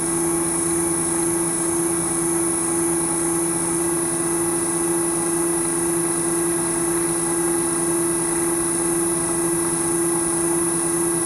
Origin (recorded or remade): recorded